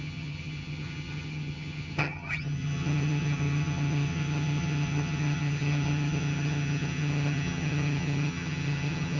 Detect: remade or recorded remade